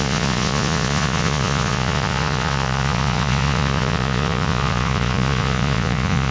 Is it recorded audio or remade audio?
remade